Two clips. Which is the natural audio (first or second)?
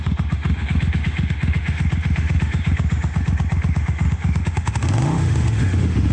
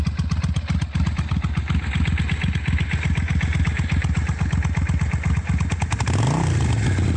second